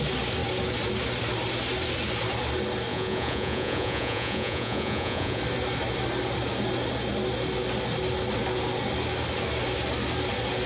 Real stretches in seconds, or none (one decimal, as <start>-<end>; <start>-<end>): 0.0-2.9; 5.4-10.7